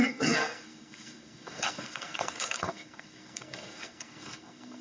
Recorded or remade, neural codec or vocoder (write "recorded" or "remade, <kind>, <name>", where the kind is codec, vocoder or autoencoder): remade, codec, SNAC